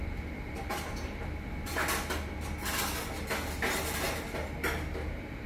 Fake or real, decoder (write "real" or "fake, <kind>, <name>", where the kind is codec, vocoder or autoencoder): real